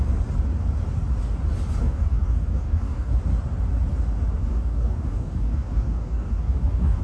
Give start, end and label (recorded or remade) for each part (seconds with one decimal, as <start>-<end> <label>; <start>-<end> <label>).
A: 0.0-1.8 recorded; 1.8-3.1 remade; 3.1-4.4 recorded; 4.4-7.0 remade